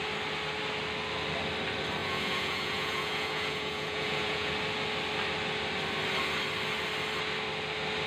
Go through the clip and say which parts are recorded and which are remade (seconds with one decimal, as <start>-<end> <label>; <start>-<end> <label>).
0.0-2.0 recorded; 2.0-4.5 remade; 4.5-8.1 recorded